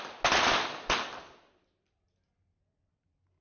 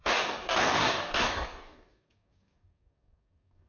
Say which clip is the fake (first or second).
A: second